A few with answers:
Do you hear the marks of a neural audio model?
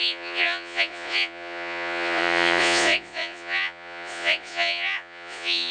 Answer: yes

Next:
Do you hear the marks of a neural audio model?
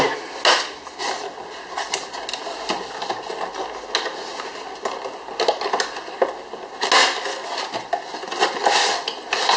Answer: no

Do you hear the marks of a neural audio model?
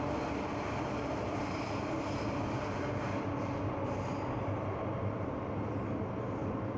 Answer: no